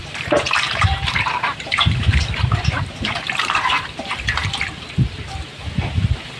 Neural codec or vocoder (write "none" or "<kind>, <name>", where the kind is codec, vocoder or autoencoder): vocoder, BigVGAN v2